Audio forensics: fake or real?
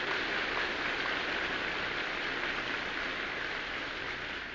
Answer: fake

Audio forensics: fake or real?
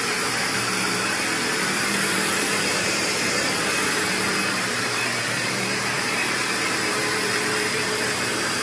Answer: fake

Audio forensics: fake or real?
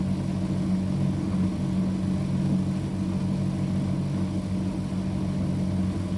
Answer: real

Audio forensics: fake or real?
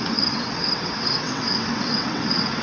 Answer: fake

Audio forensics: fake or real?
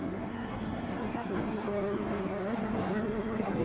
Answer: fake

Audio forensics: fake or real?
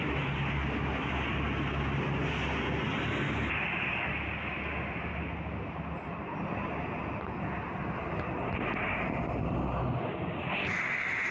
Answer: real